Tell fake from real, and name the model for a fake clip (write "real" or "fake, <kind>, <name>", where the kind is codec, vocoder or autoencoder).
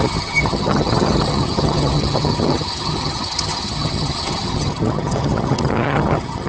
fake, vocoder, HiFi-GAN